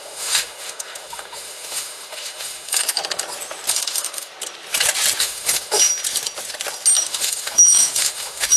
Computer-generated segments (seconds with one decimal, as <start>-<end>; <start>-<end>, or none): 0.0-3.0; 3.7-4.3; 5.2-5.9; 7.0-8.6